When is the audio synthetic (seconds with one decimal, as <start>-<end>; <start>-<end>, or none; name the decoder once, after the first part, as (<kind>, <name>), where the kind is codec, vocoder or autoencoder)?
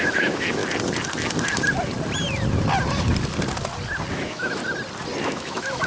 0.0-0.6 (autoencoder, DAC-VAE); 4.1-4.6; 5.2-5.9